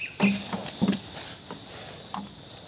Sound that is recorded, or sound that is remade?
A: recorded